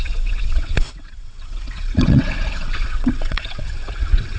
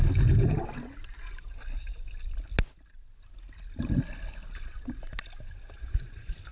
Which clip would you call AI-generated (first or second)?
first